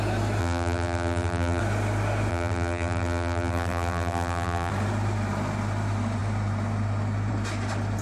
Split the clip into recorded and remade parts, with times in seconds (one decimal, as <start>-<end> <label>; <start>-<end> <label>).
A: 0.0-0.4 recorded; 0.4-1.6 remade; 1.6-2.3 recorded; 2.3-4.7 remade; 4.7-8.0 recorded